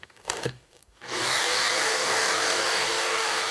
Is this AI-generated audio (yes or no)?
yes